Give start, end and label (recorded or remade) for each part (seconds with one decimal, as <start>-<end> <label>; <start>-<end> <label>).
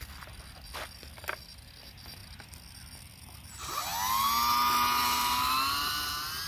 0.0-6.5 recorded